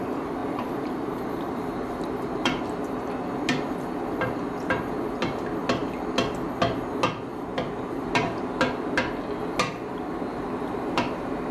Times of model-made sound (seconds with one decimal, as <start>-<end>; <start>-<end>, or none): 0.4-2.6; 7.3-8.5; 10.3-11.5